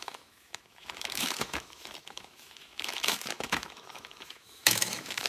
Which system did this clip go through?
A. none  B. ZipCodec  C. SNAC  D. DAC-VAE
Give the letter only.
D